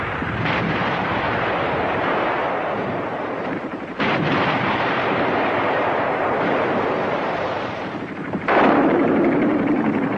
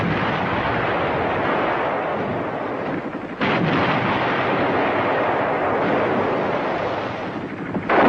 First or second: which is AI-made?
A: first